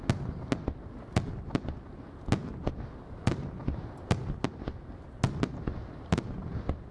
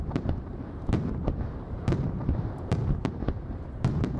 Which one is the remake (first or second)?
second